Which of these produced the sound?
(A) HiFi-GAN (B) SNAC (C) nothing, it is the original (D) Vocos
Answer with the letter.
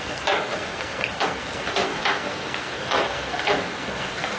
B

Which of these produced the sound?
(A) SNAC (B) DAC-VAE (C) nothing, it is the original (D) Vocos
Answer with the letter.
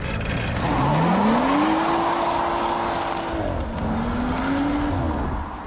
C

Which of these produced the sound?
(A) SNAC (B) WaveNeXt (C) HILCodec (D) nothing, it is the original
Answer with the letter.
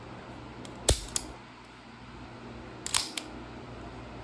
D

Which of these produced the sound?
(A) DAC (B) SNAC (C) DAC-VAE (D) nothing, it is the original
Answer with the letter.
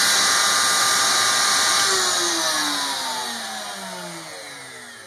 D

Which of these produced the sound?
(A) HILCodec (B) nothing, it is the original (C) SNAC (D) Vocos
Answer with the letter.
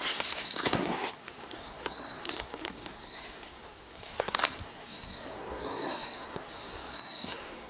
C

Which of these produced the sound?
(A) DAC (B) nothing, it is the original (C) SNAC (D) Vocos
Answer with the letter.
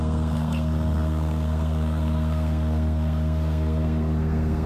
C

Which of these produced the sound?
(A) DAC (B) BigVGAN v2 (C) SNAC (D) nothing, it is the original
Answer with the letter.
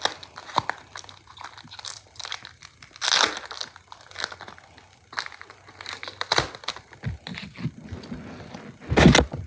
D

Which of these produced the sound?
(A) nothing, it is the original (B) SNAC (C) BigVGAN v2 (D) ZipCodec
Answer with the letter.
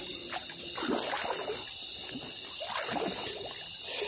A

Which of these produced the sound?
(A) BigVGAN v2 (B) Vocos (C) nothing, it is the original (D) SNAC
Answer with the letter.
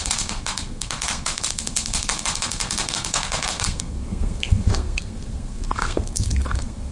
D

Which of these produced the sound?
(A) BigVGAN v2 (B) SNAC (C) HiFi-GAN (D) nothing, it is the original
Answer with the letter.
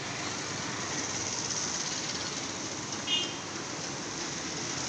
D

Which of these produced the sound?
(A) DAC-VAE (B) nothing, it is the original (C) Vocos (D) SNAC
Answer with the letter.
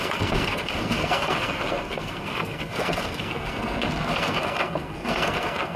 D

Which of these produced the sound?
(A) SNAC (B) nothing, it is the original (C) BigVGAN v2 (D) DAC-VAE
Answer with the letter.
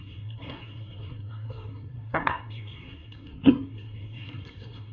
A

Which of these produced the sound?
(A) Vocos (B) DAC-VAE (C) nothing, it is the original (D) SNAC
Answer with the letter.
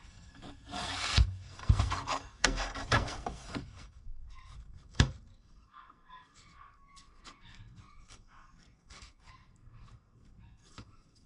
D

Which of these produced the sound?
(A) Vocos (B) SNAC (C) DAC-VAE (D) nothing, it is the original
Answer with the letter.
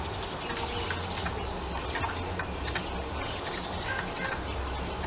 D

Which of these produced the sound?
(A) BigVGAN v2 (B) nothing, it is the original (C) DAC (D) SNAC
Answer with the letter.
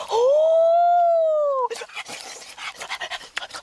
B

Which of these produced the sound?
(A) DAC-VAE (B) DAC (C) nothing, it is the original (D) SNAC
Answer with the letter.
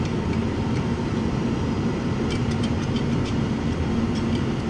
C